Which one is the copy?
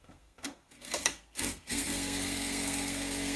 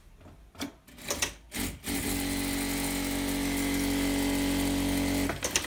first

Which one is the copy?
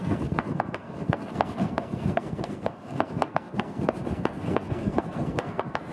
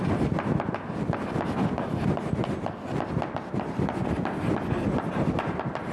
first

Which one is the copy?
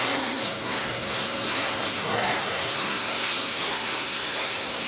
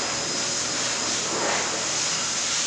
first